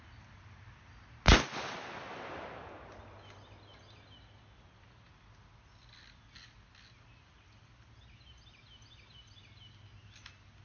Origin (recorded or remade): recorded